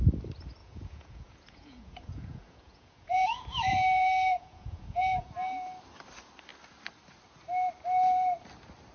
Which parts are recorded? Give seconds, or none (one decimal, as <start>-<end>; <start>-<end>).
0.0-0.6; 5.3-8.9